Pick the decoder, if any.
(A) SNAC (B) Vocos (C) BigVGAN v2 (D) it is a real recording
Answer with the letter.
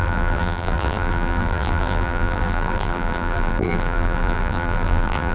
C